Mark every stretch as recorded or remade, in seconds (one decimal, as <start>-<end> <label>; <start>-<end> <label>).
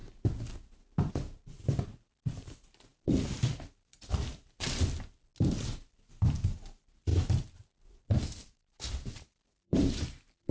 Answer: 0.0-1.1 recorded; 1.1-5.3 remade; 5.3-5.9 recorded; 5.9-10.5 remade